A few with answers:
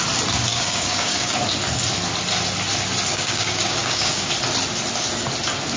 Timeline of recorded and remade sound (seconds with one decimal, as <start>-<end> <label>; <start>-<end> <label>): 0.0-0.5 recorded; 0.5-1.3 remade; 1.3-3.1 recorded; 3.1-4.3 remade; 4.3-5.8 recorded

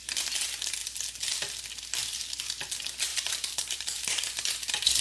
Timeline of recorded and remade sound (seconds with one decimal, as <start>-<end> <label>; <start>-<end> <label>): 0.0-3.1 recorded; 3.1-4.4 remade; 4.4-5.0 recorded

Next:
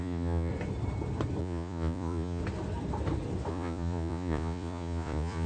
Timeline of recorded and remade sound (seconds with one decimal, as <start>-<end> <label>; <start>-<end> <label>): 0.0-0.5 remade; 0.5-1.4 recorded; 1.4-2.4 remade; 2.4-3.5 recorded; 3.5-5.5 remade

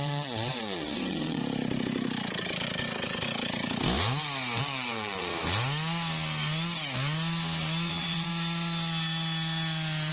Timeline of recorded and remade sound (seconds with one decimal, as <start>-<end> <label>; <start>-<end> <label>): 0.0-1.4 remade; 1.4-4.6 recorded; 4.6-5.3 remade; 5.3-7.9 recorded; 7.9-8.3 remade; 8.3-10.1 recorded

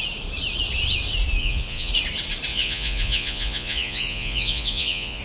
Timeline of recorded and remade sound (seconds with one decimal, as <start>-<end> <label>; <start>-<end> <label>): 0.0-1.4 recorded; 1.4-1.9 remade; 1.9-2.5 recorded; 2.5-5.2 remade

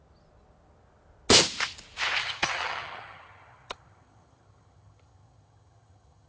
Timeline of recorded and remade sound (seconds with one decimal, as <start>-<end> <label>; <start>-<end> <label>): 0.0-2.2 recorded; 2.2-6.3 remade

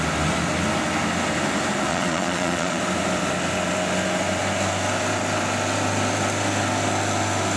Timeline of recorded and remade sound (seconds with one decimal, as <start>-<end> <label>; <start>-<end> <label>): 0.0-1.9 recorded; 1.9-2.8 remade; 2.8-7.6 recorded

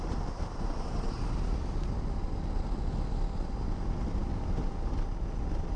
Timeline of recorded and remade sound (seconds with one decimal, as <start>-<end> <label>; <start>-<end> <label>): 0.0-5.8 recorded